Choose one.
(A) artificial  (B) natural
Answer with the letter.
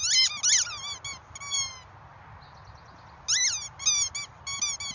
B